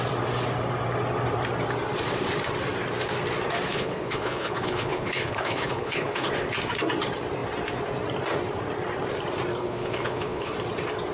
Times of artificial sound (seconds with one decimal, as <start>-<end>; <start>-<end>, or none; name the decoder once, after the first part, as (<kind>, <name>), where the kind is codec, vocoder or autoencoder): 3.7-6.3 (codec, HILCodec); 9.5-10.5